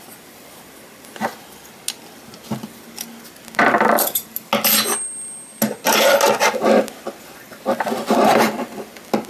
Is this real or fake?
real